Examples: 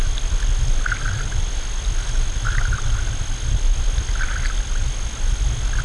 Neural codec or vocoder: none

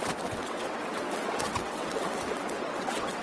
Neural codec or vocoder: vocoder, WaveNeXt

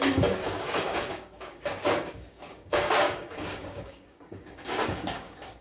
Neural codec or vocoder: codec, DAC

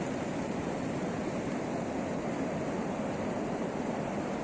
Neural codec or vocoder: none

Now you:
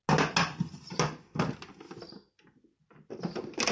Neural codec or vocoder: none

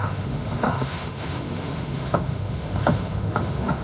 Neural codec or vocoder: autoencoder, DAC-VAE